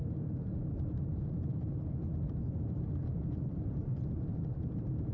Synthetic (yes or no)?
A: yes